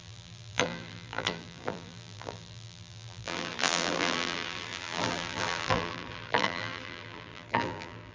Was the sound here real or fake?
fake